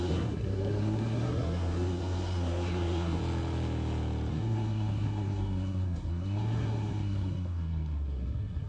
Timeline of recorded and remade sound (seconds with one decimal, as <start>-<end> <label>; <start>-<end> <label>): 0.0-3.2 remade; 3.2-4.3 recorded; 4.3-8.7 remade